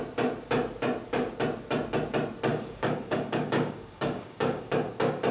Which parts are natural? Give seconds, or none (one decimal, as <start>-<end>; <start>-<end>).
0.0-2.5; 4.8-5.3